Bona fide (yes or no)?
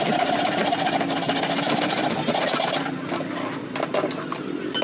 yes